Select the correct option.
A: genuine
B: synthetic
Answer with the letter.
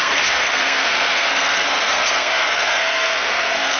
B